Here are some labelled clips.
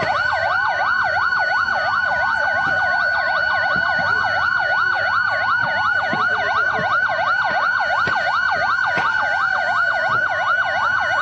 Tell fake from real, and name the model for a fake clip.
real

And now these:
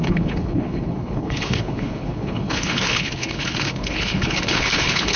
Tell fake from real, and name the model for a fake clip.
fake, codec, HILCodec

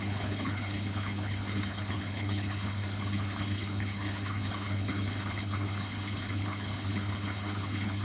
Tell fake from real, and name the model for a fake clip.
fake, codec, HILCodec